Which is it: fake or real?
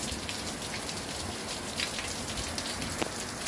real